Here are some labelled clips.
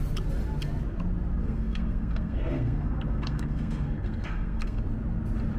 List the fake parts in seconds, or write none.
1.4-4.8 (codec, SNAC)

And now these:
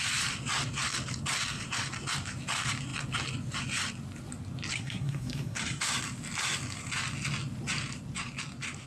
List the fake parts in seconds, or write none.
4.7-5.8 (codec, SNAC)

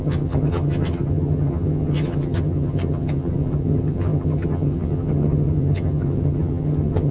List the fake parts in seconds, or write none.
0.0-7.1 (vocoder, HiFi-GAN)

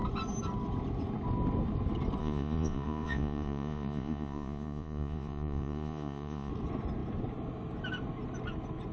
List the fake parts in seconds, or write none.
2.2-6.5 (vocoder, Vocos)

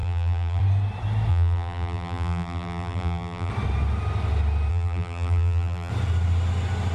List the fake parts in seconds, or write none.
0.0-0.6 (vocoder, BigVGAN v2); 1.3-3.5; 4.7-5.9

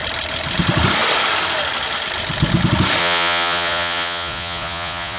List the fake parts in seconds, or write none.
3.0-5.2 (vocoder, Vocos)

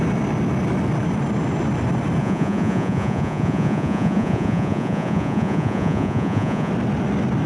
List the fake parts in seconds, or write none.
2.2-6.7 (vocoder, Vocos)